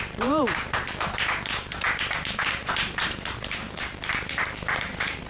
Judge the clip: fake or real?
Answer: fake